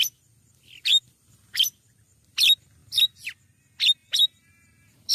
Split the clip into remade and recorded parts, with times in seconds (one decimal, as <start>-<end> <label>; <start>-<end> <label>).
0.0-4.0 recorded; 4.0-5.1 remade